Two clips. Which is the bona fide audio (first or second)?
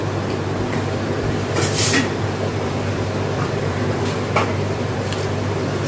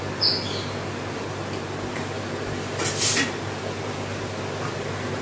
second